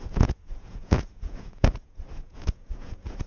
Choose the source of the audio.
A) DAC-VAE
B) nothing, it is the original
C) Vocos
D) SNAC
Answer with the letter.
C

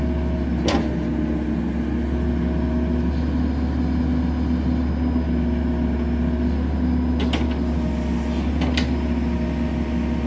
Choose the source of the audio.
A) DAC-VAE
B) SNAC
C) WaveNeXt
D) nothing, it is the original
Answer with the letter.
D